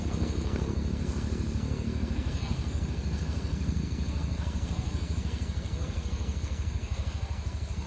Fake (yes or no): yes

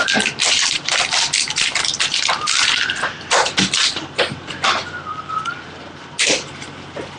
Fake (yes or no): no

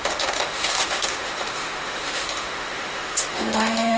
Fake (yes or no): yes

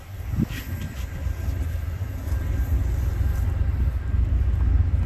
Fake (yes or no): no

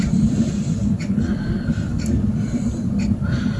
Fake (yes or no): yes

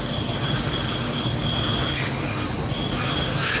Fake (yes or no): no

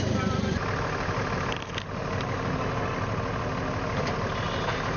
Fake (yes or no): no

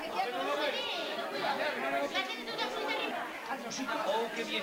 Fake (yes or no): no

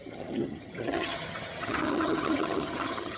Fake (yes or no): yes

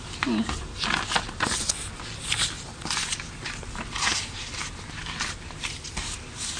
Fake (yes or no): no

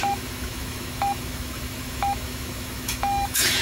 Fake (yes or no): yes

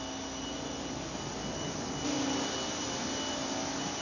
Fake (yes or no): no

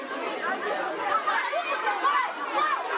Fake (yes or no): no